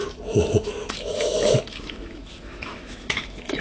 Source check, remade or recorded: remade